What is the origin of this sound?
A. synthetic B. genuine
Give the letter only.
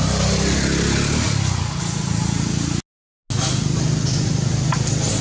B